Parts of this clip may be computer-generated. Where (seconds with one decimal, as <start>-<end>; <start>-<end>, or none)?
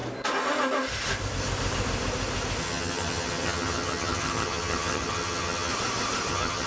2.6-5.7; 6.3-6.7